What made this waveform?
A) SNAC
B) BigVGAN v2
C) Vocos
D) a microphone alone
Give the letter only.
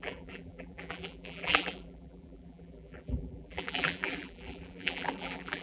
B